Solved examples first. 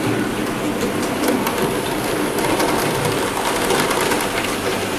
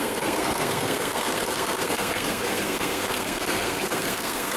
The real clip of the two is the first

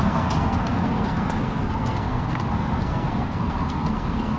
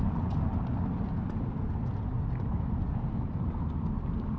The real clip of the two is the second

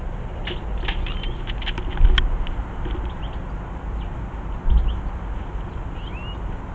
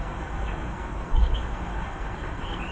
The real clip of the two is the first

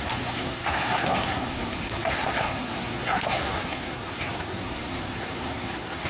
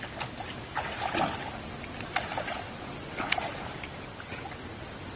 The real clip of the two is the second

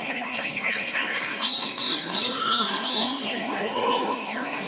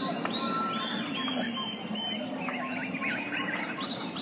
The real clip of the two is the second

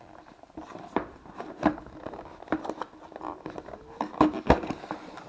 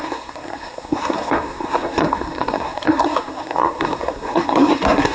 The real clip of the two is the first